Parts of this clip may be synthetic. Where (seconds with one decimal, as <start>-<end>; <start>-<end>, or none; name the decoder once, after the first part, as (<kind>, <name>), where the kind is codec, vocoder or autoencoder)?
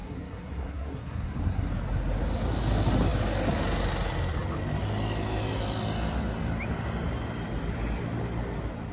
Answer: 0.0-1.7 (codec, SNAC)